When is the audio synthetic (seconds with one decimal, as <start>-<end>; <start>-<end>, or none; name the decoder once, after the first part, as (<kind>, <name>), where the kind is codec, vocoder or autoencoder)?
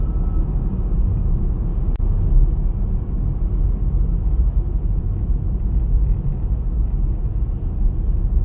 none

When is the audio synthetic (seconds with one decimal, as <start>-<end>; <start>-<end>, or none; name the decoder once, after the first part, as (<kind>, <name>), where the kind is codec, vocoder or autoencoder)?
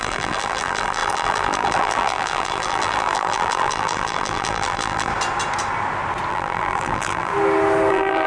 0.0-5.1 (vocoder, BigVGAN v2); 6.3-7.3; 7.9-8.3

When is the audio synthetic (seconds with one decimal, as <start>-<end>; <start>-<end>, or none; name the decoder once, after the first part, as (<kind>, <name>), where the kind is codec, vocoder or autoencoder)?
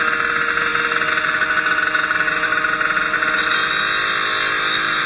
none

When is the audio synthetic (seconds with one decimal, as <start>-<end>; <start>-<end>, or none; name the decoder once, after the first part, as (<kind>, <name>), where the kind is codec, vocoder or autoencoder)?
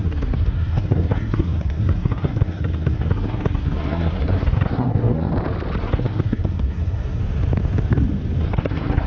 0.0-5.3 (codec, SNAC); 5.8-7.2; 8.4-9.1